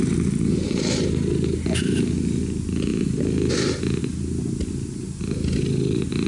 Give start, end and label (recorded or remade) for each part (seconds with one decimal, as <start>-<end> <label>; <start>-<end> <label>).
0.0-6.3 recorded

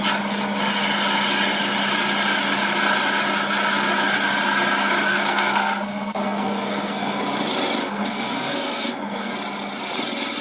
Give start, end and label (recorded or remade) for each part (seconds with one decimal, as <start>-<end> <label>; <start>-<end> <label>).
0.0-5.1 recorded; 5.1-7.2 remade; 7.2-7.8 recorded; 7.8-9.3 remade; 9.3-10.4 recorded

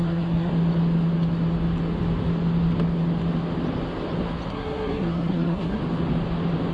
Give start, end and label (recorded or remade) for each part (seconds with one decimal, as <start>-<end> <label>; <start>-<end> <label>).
0.0-0.5 remade; 0.5-4.5 recorded; 4.5-5.8 remade; 5.8-6.7 recorded

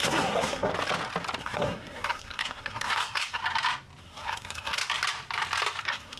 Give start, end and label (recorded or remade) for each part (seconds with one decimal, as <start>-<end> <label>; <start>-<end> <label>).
0.0-0.7 remade; 0.7-1.4 recorded; 1.4-3.4 remade; 3.4-4.0 recorded; 4.0-4.8 remade; 4.8-5.8 recorded; 5.8-6.2 remade

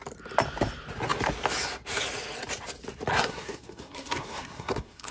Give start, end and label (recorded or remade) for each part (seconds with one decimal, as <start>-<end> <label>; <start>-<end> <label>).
0.0-3.1 recorded; 3.1-5.1 remade